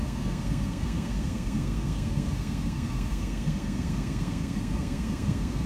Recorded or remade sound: remade